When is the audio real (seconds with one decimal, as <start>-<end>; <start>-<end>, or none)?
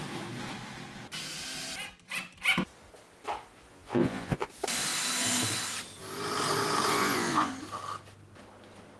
0.0-3.7; 4.5-6.9; 7.5-9.0